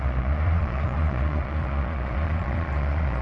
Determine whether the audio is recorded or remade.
remade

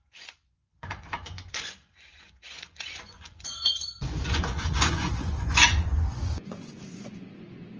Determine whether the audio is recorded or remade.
remade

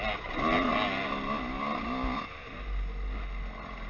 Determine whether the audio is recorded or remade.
recorded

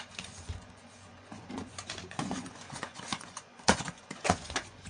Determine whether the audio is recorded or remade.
remade